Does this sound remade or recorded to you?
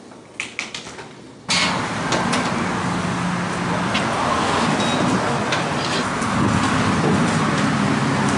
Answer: recorded